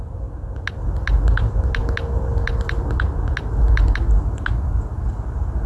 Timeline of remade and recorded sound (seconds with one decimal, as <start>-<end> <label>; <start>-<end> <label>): 0.0-5.7 recorded